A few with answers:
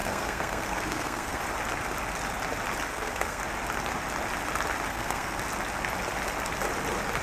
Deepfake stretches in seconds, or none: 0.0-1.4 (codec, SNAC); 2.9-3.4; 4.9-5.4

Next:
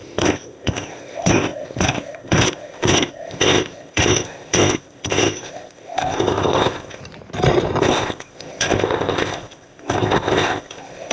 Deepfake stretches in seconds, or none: 0.0-7.0 (codec, ZipCodec); 7.8-11.1

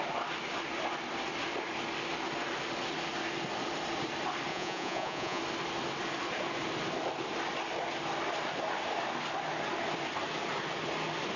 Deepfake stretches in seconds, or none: 4.5-5.4 (vocoder, Vocos)

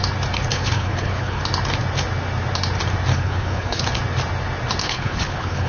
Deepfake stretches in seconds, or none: 0.5-1.4 (codec, HILCodec); 3.1-3.8; 4.8-5.7

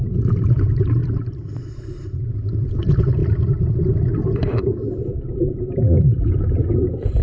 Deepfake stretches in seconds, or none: 0.0-3.2 (vocoder, BigVGAN v2); 3.7-7.2

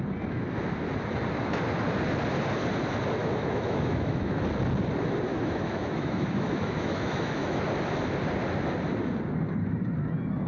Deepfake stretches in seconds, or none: 3.2-4.4 (autoencoder, DAC-VAE); 5.3-7.6

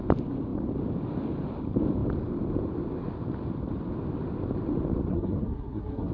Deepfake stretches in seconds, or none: 5.1-6.1 (codec, SNAC)